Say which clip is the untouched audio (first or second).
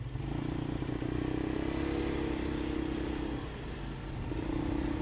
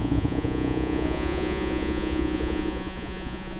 first